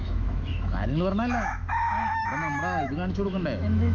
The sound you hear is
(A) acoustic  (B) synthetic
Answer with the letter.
B